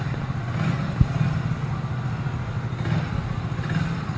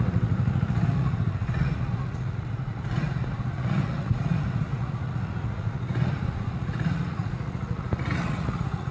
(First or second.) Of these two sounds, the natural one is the first